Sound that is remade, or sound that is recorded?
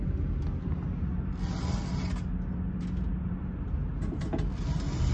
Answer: recorded